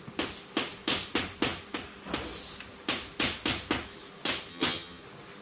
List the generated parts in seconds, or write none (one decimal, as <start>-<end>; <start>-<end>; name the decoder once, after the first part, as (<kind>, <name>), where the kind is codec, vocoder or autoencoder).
4.5-5.0 (vocoder, HiFi-GAN)